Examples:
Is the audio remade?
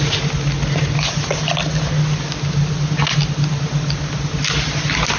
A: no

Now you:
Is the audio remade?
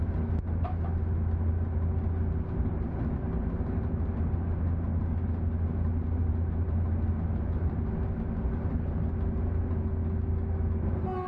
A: no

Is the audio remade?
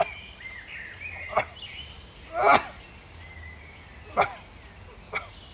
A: no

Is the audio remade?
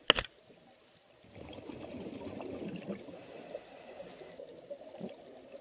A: no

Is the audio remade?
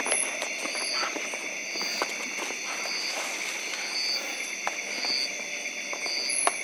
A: no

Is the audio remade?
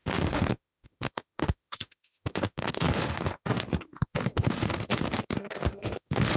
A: yes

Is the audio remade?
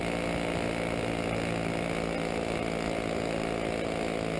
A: no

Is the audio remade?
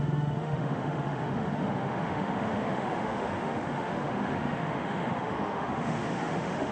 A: yes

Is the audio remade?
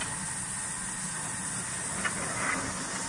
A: no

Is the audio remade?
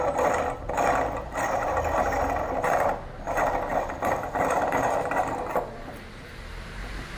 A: no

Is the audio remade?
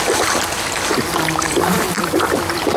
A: no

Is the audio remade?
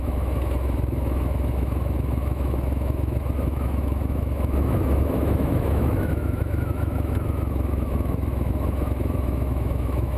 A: yes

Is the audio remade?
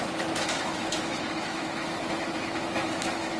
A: yes